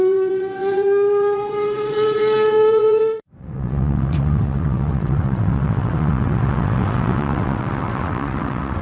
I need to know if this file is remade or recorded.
remade